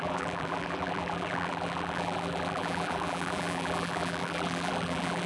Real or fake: fake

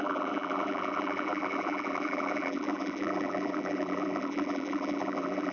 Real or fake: fake